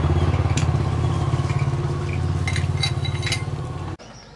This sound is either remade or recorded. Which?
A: recorded